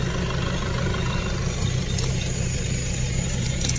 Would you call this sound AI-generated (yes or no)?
no